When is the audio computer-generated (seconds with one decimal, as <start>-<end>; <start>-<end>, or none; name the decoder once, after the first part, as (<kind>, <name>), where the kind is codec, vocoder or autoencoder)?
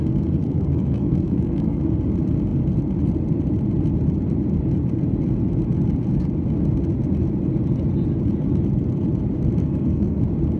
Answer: 0.4-1.9 (codec, SNAC); 9.6-10.2